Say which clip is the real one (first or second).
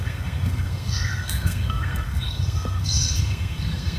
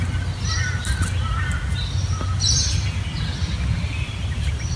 second